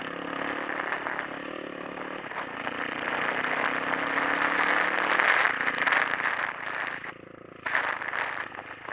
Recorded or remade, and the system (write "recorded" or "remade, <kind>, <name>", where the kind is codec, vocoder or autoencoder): recorded